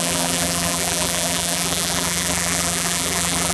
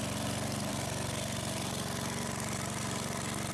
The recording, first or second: second